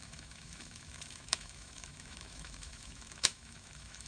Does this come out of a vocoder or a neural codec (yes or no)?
yes